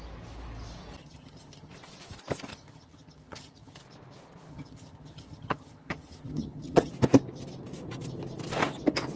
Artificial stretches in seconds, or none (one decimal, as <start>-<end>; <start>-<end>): 1.0-1.7; 2.5-3.8; 4.5-6.9